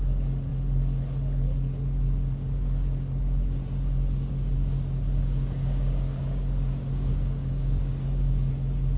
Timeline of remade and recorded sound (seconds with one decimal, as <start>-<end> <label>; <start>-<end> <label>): 0.0-5.2 recorded; 5.2-8.5 remade; 8.5-9.0 recorded